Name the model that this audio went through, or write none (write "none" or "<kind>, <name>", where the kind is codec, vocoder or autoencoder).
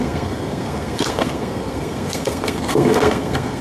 codec, SNAC